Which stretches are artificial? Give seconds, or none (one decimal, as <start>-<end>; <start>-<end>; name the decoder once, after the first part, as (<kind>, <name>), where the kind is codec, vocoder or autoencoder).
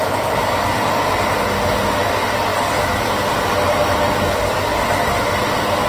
none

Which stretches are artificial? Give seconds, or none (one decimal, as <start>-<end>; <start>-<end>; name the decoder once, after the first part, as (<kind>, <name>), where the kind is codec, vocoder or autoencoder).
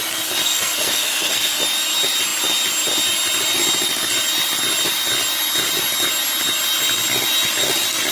0.4-1.6 (codec, SNAC)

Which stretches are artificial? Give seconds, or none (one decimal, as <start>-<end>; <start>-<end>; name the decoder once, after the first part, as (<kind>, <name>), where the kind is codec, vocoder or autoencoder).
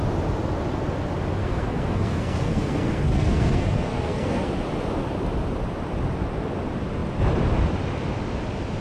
1.4-4.5 (codec, SNAC)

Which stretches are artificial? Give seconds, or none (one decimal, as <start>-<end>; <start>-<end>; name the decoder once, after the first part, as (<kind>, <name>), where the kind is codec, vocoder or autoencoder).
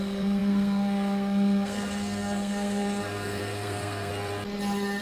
0.0-4.1 (codec, SNAC)